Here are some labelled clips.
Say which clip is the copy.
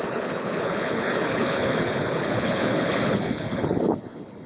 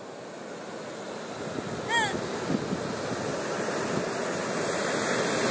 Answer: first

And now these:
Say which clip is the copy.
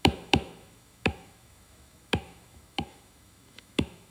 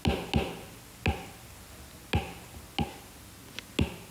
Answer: first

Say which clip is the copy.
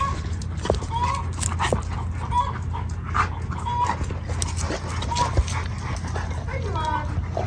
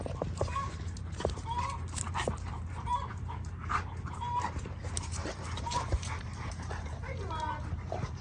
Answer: second